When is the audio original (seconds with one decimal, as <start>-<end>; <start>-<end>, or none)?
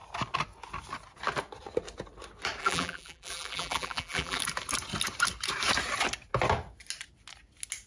0.0-2.6; 4.4-7.9